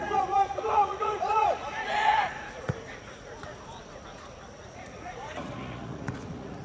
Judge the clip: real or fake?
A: fake